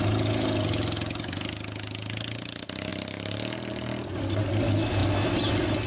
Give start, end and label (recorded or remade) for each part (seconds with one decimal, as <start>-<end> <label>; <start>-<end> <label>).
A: 0.0-5.9 recorded